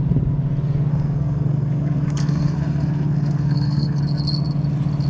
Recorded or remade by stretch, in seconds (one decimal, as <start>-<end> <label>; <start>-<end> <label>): 0.0-0.9 recorded; 0.9-4.0 remade; 4.0-5.1 recorded